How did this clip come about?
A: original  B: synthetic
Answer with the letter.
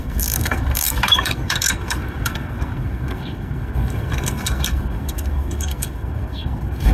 B